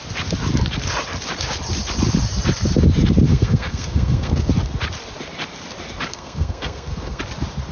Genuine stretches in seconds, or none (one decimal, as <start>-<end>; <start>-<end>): 0.0-3.3; 4.5-6.1; 7.2-7.7